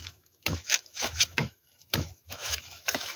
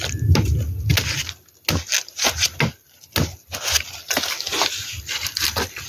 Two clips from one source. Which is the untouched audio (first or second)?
second